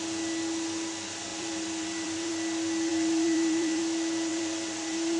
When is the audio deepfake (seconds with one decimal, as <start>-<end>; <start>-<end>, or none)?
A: 1.3-2.3; 2.9-3.8; 4.3-5.2